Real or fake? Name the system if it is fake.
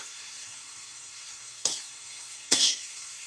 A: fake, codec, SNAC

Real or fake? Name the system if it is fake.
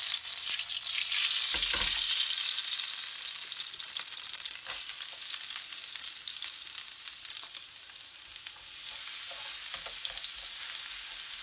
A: real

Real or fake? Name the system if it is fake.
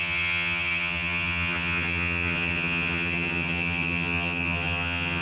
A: fake, vocoder, HiFi-GAN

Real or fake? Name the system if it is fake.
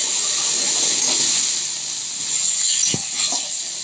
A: real